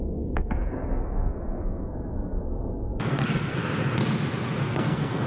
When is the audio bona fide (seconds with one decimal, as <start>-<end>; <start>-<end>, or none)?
3.6-4.6